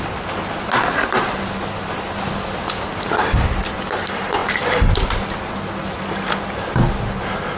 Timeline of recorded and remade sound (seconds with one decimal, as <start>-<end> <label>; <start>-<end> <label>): 0.0-7.6 recorded